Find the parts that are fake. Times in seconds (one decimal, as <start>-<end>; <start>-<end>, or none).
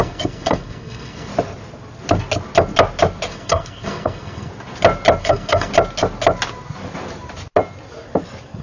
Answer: 0.0-1.3; 3.3-4.5; 5.2-5.7